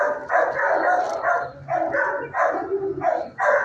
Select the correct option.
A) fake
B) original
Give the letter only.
B